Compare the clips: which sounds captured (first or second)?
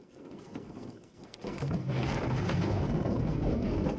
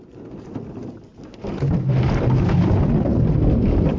second